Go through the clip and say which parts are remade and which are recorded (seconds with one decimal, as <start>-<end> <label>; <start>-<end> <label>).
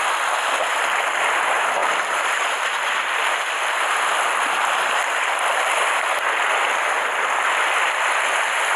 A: 0.0-1.8 recorded; 1.8-6.0 remade; 6.0-8.8 recorded